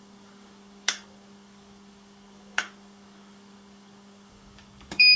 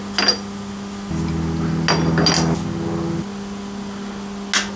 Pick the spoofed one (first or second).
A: first